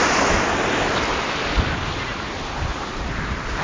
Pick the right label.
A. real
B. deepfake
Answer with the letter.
A